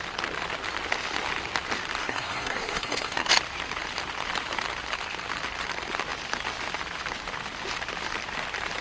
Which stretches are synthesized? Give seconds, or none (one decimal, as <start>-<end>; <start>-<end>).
2.0-3.3